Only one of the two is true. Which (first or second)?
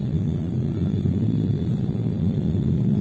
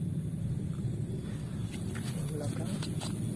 second